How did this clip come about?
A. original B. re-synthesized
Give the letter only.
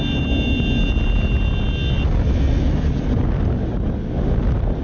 A